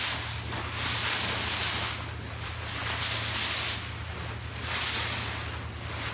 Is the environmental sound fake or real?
real